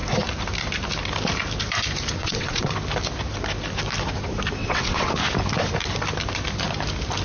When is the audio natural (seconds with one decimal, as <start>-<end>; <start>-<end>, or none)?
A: 0.0-2.2; 2.7-4.6; 5.1-7.2